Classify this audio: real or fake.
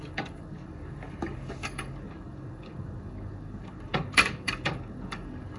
fake